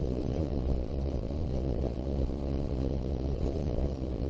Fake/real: fake